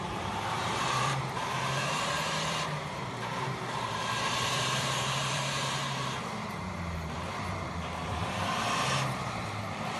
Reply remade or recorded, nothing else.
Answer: remade